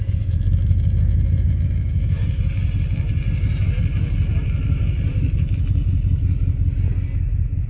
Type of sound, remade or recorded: recorded